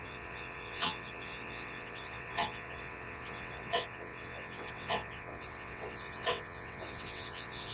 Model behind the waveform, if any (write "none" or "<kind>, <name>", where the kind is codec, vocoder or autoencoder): vocoder, WaveNeXt